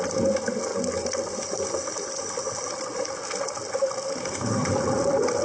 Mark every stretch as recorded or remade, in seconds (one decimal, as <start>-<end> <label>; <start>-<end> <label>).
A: 0.0-4.2 recorded; 4.2-4.7 remade; 4.7-5.4 recorded